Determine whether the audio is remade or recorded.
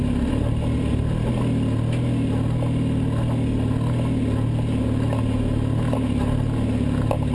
recorded